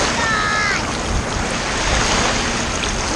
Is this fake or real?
real